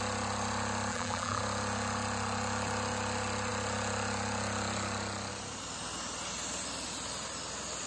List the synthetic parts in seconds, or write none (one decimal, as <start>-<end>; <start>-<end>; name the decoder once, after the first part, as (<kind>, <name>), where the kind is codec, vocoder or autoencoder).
0.9-1.4 (vocoder, BigVGAN v2)